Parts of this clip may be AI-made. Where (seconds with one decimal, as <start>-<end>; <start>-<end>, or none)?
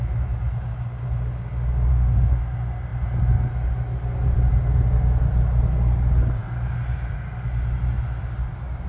1.9-2.4